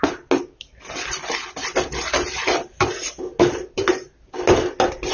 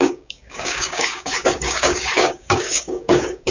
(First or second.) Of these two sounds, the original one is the first